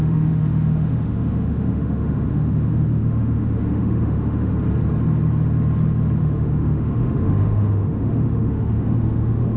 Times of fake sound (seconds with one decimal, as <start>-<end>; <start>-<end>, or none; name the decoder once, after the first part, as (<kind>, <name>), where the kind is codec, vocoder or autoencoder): 0.0-4.5 (autoencoder, DAC-VAE); 6.2-9.6